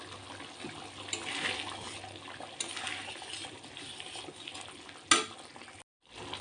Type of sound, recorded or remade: recorded